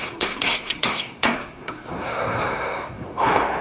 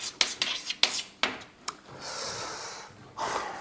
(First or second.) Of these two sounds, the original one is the second